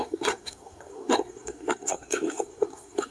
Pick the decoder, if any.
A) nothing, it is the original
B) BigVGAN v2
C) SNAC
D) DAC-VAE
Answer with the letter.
C